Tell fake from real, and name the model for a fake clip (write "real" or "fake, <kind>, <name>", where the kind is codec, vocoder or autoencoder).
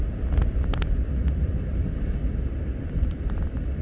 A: fake, vocoder, BigVGAN v2